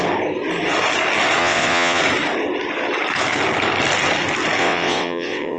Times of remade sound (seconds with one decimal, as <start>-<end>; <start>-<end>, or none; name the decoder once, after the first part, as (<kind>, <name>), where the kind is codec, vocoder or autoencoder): 1.4-2.0 (vocoder, WaveNeXt); 4.6-5.6